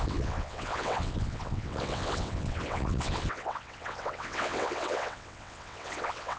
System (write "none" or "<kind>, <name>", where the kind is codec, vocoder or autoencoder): vocoder, WaveNeXt